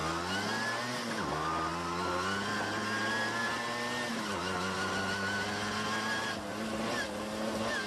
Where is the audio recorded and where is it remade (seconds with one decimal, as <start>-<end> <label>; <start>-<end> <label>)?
0.0-7.9 recorded